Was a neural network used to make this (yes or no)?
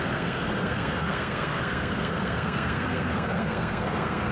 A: yes